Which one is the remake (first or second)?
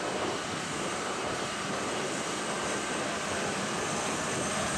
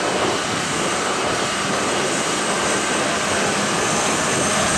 first